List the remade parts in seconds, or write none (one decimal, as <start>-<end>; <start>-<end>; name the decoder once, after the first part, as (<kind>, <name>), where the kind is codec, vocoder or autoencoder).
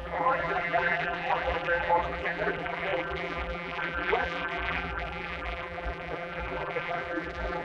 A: 0.0-7.6 (vocoder, BigVGAN v2)